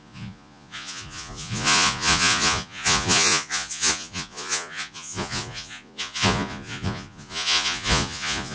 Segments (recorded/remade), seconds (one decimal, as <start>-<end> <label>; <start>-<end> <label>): 0.0-8.5 remade